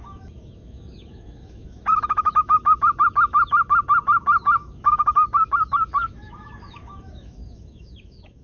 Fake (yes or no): yes